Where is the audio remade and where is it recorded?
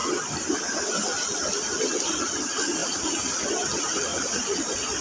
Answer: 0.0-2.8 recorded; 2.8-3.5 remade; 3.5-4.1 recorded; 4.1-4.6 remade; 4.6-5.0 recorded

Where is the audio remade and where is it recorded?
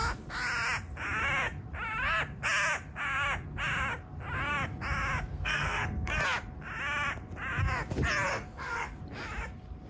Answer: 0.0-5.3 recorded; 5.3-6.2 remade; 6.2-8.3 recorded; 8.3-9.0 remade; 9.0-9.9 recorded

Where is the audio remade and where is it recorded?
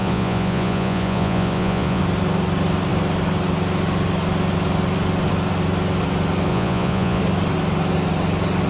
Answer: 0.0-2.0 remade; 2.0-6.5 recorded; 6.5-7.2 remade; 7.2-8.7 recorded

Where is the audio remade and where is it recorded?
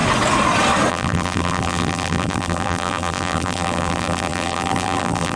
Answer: 0.0-0.9 recorded; 0.9-5.4 remade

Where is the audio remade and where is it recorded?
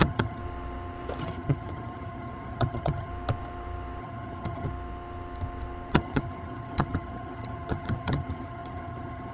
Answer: 0.0-0.4 remade; 0.4-1.2 recorded; 1.2-3.1 remade; 3.1-4.0 recorded; 4.0-4.7 remade; 4.7-5.9 recorded; 5.9-9.3 remade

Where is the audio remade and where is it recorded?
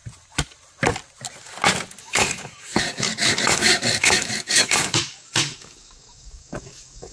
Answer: 0.0-2.0 recorded; 2.0-7.1 remade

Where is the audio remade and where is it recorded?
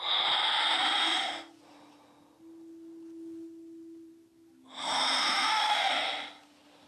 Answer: 0.0-0.7 recorded; 0.7-1.3 remade; 1.3-5.2 recorded; 5.2-5.9 remade; 5.9-6.9 recorded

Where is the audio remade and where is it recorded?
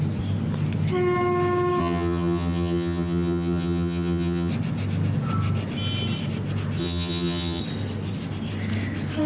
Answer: 0.0-1.8 recorded; 1.8-4.5 remade; 4.5-6.8 recorded; 6.8-7.6 remade; 7.6-9.3 recorded